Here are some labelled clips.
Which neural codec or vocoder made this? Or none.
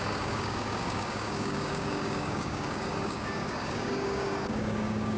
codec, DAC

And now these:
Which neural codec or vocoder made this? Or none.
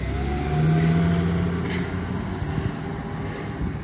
none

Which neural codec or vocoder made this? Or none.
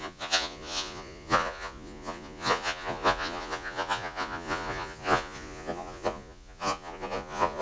vocoder, Vocos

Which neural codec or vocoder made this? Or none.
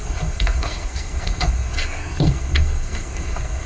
codec, SNAC